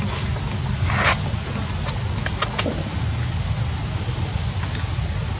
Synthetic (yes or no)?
no